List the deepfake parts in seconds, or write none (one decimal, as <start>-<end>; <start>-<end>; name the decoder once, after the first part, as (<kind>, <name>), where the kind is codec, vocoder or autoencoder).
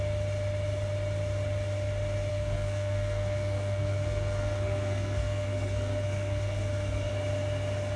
2.3-7.1 (codec, SNAC)